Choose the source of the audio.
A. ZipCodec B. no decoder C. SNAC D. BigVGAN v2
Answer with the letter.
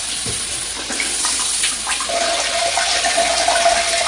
B